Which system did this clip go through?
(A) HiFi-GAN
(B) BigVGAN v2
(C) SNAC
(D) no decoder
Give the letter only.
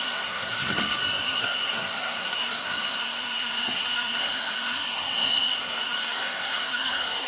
C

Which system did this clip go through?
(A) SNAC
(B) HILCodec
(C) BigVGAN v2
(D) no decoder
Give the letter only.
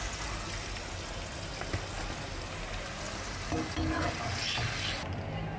D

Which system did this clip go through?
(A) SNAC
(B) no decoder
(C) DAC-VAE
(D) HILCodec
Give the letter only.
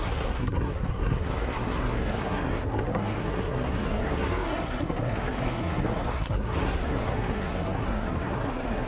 A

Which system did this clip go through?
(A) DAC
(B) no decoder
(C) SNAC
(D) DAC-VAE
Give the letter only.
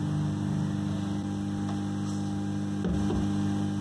B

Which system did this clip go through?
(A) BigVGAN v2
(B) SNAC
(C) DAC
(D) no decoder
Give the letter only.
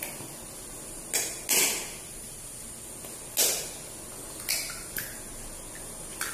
D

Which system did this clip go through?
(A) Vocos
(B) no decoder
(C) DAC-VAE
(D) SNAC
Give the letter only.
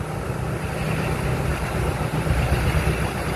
B